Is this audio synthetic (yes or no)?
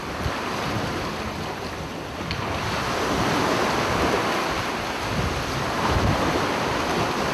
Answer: no